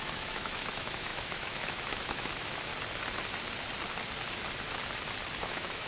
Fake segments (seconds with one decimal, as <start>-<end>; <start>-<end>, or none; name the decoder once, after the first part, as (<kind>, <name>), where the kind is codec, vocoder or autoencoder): 0.0-2.7 (autoencoder, DAC-VAE); 5.4-5.9